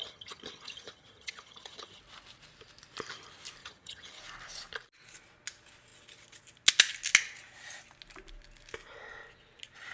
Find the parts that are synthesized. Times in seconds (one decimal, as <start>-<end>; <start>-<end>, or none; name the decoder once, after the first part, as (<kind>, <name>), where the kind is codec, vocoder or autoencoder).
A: 0.0-2.0 (vocoder, HiFi-GAN); 3.6-4.2